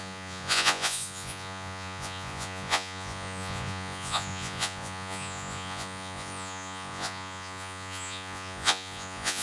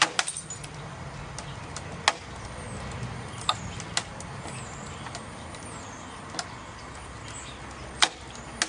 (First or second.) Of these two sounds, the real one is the second